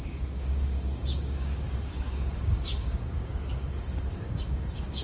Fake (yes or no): yes